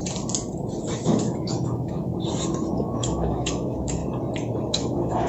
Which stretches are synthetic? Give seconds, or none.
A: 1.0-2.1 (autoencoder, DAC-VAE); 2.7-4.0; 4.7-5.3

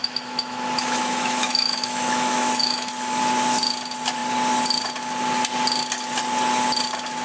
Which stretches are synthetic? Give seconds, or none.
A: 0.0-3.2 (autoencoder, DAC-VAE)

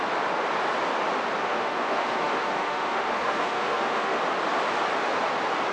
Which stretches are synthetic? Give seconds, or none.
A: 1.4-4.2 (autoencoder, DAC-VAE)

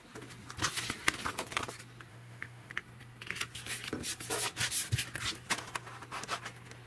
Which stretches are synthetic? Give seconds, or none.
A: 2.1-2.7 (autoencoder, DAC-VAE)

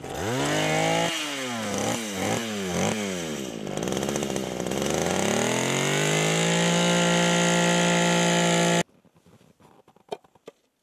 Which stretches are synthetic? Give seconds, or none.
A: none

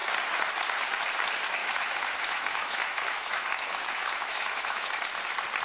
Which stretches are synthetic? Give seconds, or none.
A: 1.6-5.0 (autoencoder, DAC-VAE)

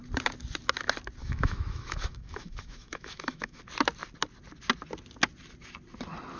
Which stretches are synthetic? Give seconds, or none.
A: 1.2-3.6 (autoencoder, DAC-VAE)

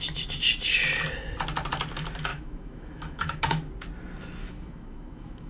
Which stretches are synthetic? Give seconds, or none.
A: 2.3-3.7 (autoencoder, DAC-VAE); 4.4-5.5